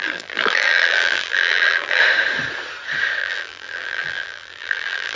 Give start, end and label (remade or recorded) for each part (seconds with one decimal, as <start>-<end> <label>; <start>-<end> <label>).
0.0-2.0 remade; 2.0-3.2 recorded; 3.2-5.2 remade

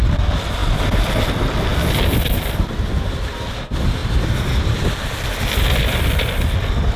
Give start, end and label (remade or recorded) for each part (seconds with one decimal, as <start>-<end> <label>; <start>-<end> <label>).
0.0-7.0 recorded

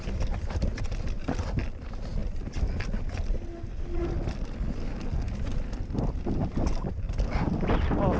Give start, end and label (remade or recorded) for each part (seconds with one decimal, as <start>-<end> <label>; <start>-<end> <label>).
0.0-8.2 recorded

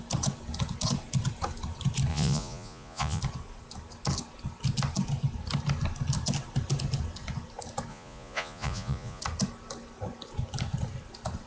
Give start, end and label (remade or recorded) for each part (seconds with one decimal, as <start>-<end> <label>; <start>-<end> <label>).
0.0-2.1 recorded; 2.1-3.2 remade; 3.2-7.9 recorded; 7.9-9.2 remade; 9.2-11.5 recorded

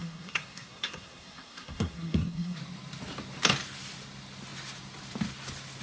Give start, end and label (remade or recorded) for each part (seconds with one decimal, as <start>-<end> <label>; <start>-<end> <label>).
0.0-2.6 remade; 2.6-5.8 recorded

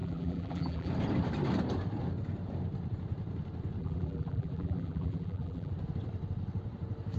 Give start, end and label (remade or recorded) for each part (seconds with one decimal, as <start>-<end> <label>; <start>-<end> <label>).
0.0-0.9 remade; 0.9-3.8 recorded; 3.8-5.7 remade; 5.7-7.2 recorded